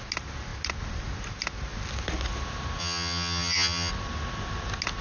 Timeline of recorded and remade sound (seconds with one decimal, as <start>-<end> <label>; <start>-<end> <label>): 0.0-2.8 recorded; 2.8-3.9 remade; 3.9-5.0 recorded

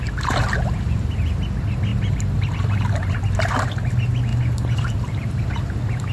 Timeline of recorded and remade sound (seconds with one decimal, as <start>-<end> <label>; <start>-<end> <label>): 0.0-1.9 recorded; 1.9-3.1 remade; 3.1-4.3 recorded; 4.3-5.5 remade; 5.5-6.1 recorded